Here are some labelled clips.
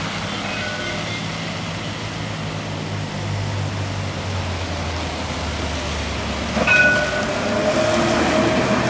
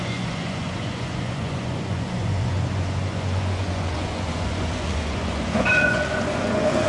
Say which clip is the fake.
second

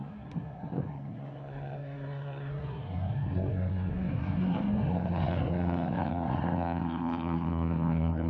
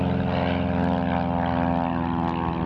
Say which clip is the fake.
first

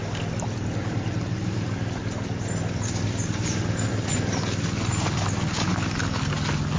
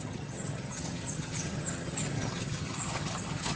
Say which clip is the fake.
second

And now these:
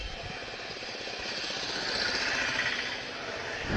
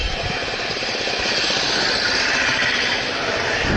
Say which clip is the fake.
second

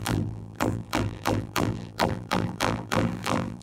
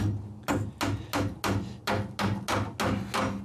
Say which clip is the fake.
first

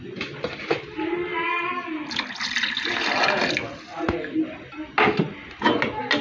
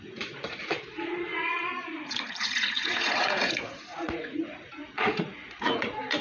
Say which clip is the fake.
second